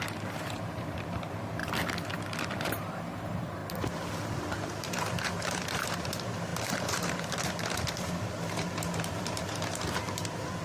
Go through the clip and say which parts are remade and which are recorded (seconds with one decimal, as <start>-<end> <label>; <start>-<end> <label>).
0.0-1.6 remade; 1.6-2.5 recorded; 2.5-3.6 remade; 3.6-4.6 recorded; 4.6-10.6 remade